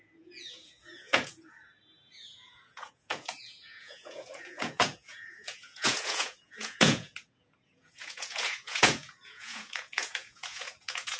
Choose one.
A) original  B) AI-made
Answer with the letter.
B